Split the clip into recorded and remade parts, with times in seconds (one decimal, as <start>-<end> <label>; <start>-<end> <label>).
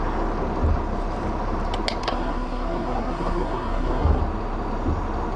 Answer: 0.0-2.0 recorded; 2.0-4.2 remade; 4.2-5.4 recorded